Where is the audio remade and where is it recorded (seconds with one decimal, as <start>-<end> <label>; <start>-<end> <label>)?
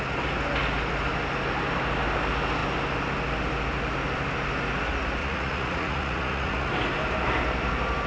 0.0-5.2 recorded; 5.2-6.7 remade; 6.7-8.1 recorded